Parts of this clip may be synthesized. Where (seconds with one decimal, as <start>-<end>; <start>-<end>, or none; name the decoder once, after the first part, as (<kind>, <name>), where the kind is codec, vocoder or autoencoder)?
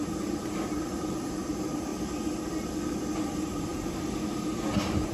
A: 0.0-1.9 (vocoder, BigVGAN v2); 3.3-3.7